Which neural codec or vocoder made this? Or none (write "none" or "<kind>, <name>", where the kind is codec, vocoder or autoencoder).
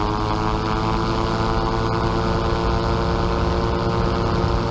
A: none